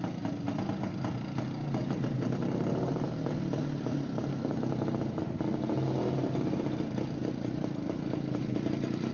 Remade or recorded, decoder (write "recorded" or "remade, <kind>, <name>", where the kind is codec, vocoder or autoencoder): recorded